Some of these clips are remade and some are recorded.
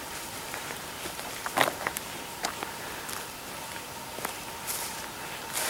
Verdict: remade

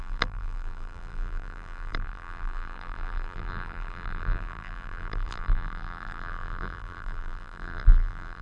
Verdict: remade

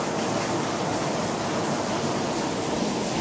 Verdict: recorded